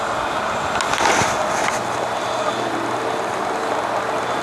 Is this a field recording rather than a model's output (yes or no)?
yes